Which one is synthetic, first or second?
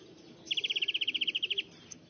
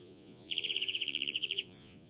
second